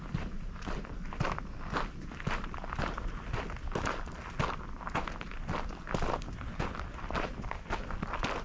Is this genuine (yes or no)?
yes